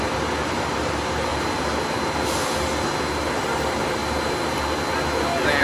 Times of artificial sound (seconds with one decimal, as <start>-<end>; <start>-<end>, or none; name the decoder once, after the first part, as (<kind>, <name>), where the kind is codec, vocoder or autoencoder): 0.0-1.3 (vocoder, BigVGAN v2); 3.3-4.0